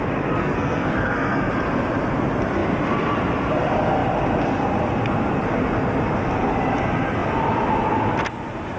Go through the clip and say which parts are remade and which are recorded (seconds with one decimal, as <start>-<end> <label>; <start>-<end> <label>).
0.0-0.4 recorded; 0.4-1.5 remade; 1.5-8.8 recorded